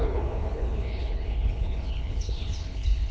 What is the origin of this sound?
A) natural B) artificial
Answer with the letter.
B